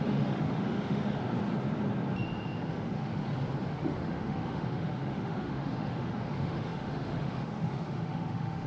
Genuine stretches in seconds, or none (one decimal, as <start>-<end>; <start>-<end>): 1.2-2.7; 3.2-3.7